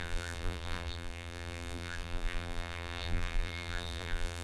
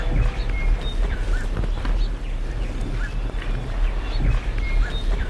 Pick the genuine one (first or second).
second